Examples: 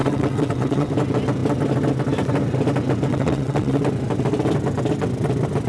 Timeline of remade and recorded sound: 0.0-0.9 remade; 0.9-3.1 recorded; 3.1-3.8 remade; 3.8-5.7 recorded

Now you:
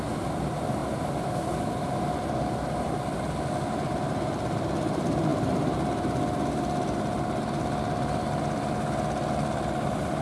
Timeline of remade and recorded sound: 0.0-10.2 recorded